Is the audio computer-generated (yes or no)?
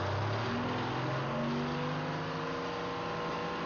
no